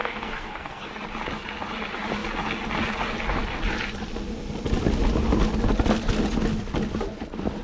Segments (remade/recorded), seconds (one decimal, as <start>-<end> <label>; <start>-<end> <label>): 0.0-0.9 remade; 0.9-7.6 recorded